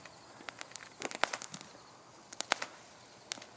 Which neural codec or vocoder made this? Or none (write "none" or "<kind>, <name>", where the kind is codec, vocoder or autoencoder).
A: none